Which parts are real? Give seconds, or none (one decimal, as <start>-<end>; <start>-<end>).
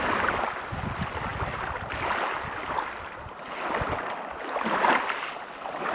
0.0-5.9